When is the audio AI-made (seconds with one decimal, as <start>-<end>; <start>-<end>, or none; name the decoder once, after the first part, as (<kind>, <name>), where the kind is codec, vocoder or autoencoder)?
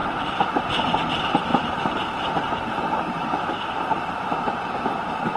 1.5-4.7 (vocoder, BigVGAN v2)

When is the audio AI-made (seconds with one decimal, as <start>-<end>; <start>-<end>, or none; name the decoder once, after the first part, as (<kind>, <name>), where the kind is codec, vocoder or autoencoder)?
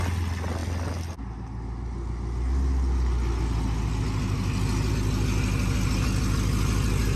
none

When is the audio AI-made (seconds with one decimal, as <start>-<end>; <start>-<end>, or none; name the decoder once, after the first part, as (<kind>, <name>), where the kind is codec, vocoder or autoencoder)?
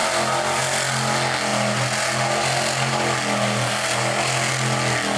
none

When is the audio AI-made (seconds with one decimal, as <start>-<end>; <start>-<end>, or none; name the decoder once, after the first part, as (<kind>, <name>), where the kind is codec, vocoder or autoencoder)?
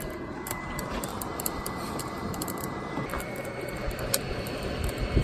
0.0-5.2 (vocoder, BigVGAN v2)